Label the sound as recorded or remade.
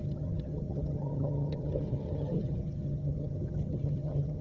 remade